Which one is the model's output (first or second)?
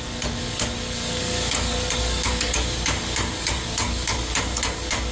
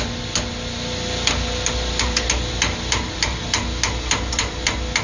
first